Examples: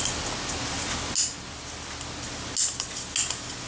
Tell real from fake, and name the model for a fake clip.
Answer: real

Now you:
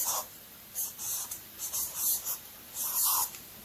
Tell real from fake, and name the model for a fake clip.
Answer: fake, vocoder, BigVGAN v2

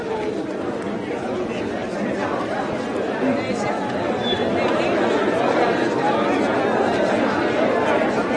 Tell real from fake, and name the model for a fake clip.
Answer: real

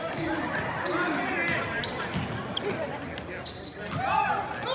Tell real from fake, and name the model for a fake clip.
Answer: real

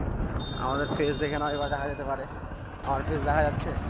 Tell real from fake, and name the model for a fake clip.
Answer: real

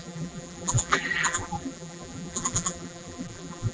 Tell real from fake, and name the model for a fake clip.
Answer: fake, vocoder, BigVGAN v2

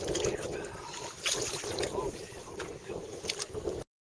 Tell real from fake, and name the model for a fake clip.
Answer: real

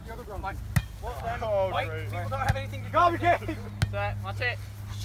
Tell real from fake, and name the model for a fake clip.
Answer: real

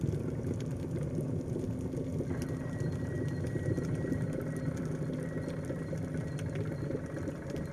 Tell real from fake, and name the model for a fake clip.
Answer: real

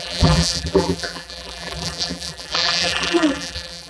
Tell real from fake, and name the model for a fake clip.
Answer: fake, vocoder, BigVGAN v2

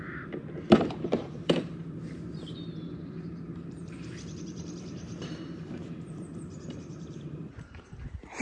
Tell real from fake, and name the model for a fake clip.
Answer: fake, vocoder, BigVGAN v2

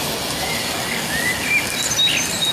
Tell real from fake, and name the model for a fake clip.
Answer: real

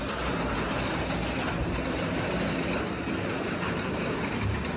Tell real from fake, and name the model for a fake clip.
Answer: real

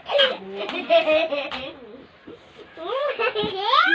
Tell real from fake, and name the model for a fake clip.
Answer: real